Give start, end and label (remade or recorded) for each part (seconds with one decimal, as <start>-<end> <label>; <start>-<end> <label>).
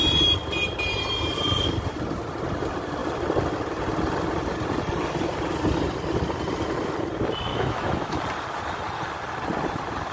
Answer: 0.0-7.5 recorded; 7.5-8.2 remade; 8.2-10.1 recorded